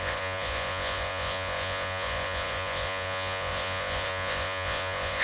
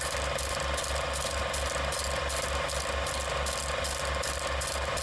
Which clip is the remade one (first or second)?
first